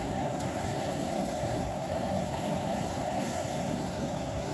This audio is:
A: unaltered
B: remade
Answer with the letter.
B